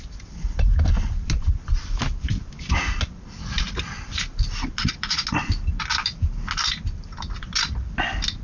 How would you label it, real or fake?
real